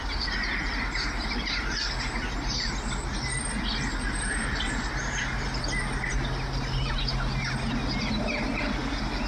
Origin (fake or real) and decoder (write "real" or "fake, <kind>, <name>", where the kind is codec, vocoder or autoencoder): real